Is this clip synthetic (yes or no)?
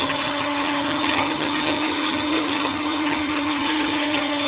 yes